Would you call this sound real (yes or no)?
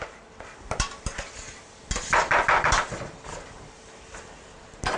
yes